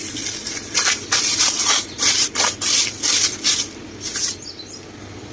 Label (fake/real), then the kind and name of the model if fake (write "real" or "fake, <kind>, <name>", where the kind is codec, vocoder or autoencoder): real